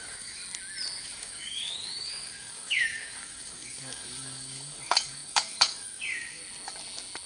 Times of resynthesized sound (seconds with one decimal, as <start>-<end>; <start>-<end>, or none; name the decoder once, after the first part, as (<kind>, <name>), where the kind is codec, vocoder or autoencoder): 0.0-0.4 (codec, DAC); 1.0-6.4